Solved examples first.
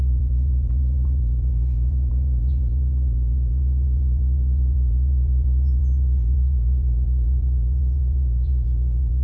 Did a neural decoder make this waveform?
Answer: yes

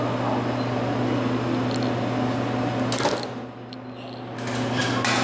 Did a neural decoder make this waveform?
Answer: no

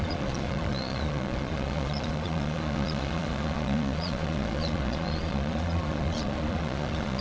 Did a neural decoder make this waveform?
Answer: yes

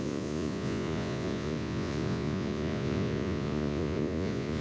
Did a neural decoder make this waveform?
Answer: yes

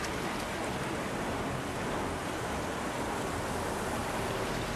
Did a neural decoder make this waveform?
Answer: no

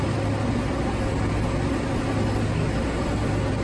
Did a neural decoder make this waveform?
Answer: no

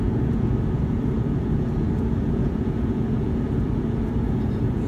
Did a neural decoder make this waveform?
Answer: yes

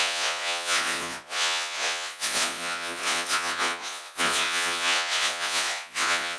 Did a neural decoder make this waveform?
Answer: yes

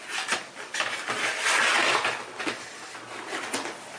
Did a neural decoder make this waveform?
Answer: no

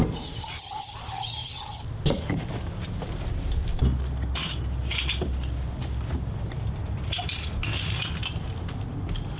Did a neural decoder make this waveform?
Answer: no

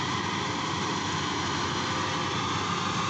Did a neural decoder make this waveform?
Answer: no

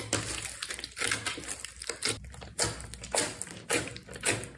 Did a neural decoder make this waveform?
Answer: no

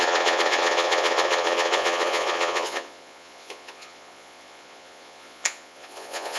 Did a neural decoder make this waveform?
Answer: yes